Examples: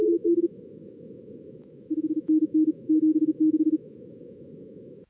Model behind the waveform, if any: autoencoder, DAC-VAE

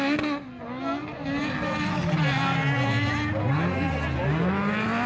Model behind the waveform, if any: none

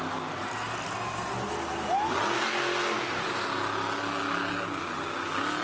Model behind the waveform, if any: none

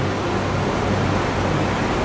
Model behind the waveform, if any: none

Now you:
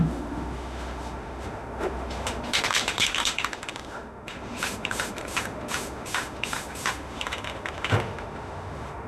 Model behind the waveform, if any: autoencoder, DAC-VAE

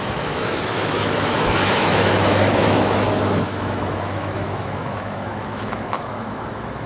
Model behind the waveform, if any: autoencoder, DAC-VAE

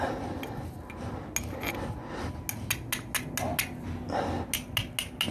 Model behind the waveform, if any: none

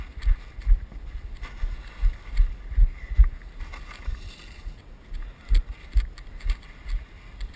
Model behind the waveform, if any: none